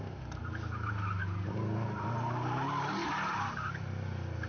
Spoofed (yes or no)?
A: no